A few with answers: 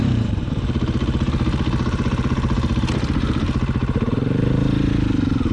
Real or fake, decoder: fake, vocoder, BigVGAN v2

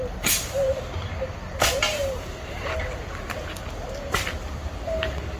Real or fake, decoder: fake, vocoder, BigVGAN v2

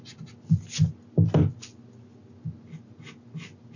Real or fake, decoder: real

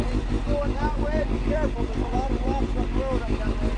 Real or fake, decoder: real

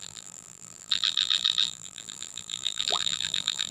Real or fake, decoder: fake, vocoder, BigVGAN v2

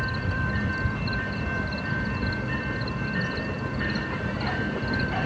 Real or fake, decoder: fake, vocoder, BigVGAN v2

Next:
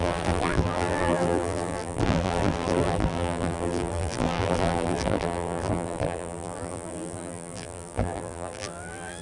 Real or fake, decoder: fake, vocoder, BigVGAN v2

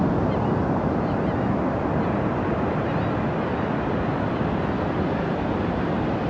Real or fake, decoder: real